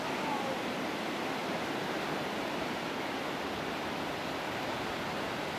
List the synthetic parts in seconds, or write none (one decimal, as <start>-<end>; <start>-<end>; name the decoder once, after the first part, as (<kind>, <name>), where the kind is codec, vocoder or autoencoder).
none